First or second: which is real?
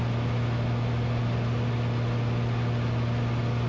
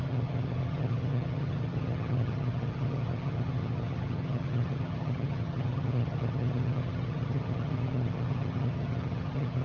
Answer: first